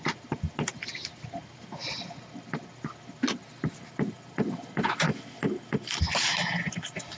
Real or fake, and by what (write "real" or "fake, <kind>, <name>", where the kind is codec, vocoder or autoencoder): real